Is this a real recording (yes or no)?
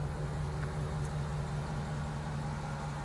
yes